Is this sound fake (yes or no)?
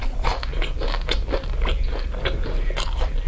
no